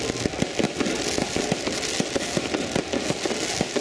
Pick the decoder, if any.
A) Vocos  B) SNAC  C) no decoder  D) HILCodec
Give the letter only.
C